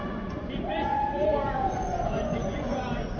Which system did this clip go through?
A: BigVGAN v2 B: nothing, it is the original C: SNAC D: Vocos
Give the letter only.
D